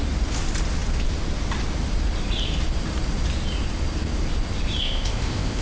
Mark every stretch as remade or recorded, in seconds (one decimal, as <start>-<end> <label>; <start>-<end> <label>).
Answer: 0.0-4.8 recorded; 4.8-5.6 remade